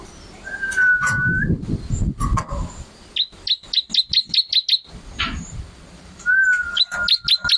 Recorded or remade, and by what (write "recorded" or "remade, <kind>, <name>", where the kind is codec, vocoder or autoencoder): recorded